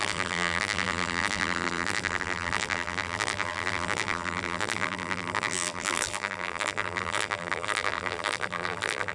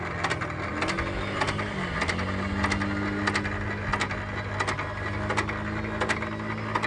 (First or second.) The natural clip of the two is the second